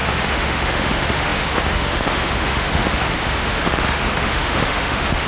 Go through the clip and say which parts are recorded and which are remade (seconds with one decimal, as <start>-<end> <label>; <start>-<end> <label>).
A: 0.0-5.3 remade